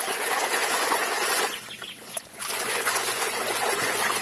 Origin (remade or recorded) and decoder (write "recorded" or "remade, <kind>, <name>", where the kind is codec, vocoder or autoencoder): remade, vocoder, Vocos